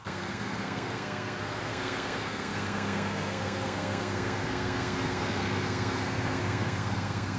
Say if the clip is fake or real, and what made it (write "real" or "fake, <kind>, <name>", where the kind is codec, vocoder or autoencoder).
fake, codec, SNAC